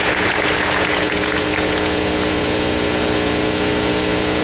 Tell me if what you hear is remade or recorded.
remade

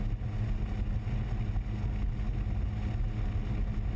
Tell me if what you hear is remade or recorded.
recorded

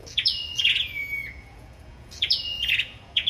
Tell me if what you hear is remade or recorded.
remade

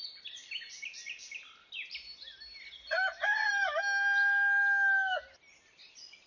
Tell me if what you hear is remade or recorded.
recorded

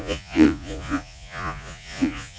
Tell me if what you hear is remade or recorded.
remade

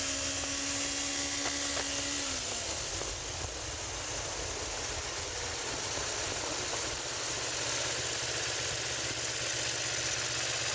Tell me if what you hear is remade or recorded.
recorded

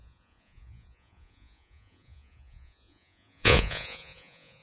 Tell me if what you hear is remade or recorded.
remade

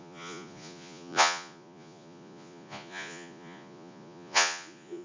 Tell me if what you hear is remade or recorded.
remade